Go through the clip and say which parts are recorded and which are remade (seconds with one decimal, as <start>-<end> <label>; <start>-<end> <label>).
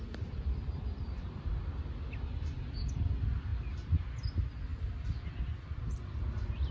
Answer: 0.0-6.7 recorded